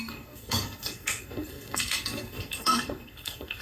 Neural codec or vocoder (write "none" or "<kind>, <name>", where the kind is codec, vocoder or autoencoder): codec, SNAC